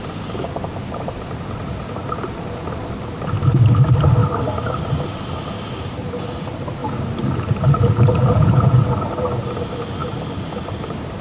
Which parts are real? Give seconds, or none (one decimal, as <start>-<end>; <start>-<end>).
0.0-8.2; 8.9-11.2